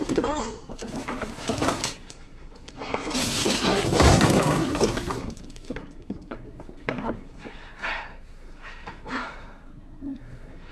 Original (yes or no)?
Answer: no